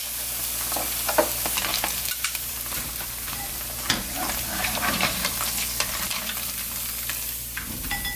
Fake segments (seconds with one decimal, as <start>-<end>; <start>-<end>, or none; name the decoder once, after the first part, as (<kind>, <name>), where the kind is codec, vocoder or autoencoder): 1.7-5.3 (vocoder, BigVGAN v2)